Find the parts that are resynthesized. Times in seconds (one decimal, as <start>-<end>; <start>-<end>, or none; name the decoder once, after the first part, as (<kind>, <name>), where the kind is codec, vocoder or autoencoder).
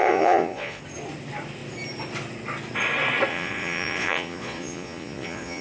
0.0-0.8 (vocoder, Vocos); 3.3-5.6